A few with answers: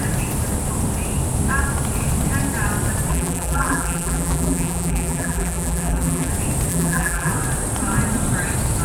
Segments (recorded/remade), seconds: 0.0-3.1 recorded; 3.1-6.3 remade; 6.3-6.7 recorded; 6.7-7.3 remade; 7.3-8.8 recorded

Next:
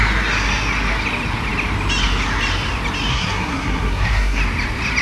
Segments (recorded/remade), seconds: 0.0-3.1 recorded; 3.1-4.4 remade; 4.4-5.0 recorded